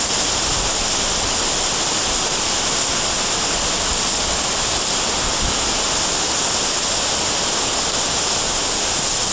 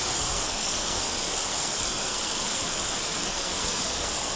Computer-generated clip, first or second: second